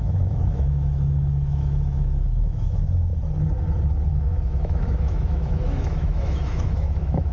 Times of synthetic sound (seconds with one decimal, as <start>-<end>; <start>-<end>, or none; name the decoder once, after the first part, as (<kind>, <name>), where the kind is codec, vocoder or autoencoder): 0.0-3.1 (autoencoder, DAC-VAE); 4.1-7.3